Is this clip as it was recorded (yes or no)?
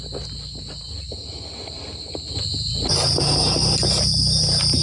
yes